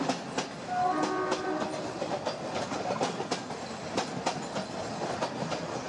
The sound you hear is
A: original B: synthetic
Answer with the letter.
A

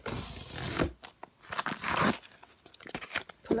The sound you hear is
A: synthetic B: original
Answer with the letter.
B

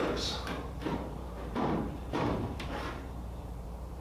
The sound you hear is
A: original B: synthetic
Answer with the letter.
B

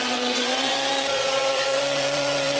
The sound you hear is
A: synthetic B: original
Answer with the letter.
A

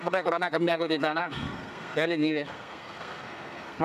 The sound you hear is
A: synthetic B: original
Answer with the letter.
A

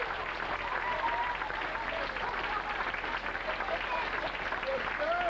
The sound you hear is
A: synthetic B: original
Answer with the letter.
B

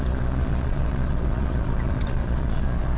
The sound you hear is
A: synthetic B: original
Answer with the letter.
A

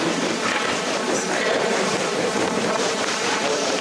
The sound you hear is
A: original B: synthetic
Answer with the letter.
A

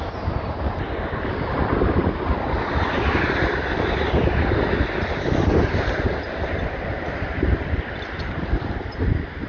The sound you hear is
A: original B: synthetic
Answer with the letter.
A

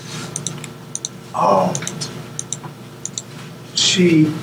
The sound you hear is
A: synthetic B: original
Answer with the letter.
B